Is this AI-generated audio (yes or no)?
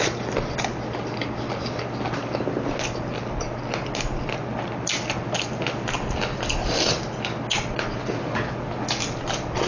no